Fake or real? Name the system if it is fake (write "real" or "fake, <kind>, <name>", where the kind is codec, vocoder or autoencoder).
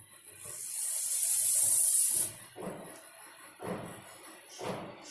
real